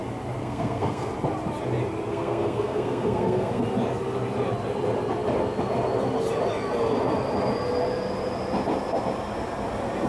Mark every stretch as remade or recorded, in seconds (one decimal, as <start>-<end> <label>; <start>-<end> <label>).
0.0-0.4 recorded; 0.4-1.1 remade; 1.1-2.1 recorded; 2.1-3.6 remade; 3.6-10.1 recorded